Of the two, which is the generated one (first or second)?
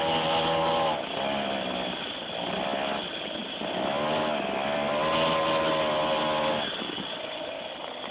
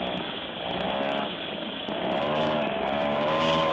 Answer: second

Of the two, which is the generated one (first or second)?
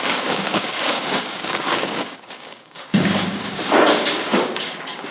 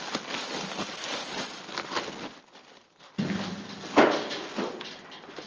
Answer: first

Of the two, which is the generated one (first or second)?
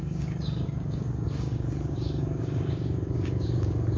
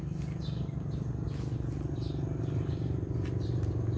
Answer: first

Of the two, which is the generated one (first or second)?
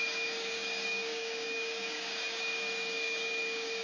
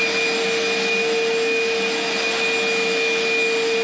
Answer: first